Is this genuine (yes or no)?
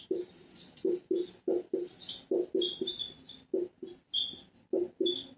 yes